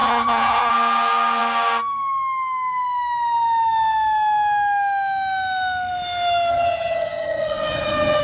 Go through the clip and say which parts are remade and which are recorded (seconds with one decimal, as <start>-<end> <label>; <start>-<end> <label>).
0.0-0.7 remade; 0.7-6.5 recorded; 6.5-8.2 remade